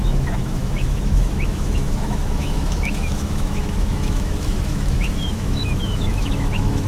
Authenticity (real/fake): fake